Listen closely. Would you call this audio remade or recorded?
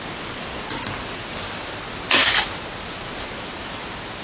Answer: recorded